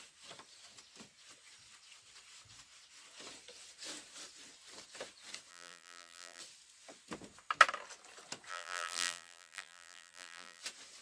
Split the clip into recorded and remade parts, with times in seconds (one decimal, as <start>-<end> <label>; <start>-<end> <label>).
0.0-5.5 recorded; 5.5-6.4 remade; 6.4-8.5 recorded; 8.5-10.6 remade; 10.6-11.0 recorded